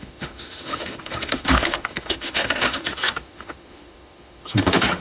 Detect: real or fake fake